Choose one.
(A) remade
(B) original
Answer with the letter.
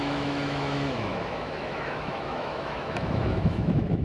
A